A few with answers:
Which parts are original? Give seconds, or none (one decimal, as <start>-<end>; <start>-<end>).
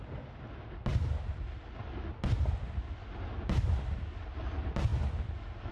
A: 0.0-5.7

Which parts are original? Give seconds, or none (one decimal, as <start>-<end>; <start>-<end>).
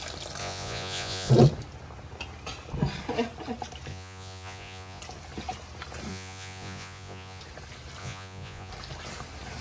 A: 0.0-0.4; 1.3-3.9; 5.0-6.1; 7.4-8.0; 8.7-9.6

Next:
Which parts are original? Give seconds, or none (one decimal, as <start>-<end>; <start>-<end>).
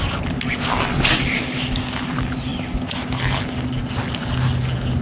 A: 0.0-5.0